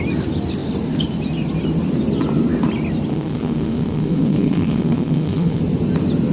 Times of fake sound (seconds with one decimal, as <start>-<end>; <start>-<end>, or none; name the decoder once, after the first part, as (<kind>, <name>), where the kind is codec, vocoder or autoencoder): 3.1-5.6 (autoencoder, DAC-VAE)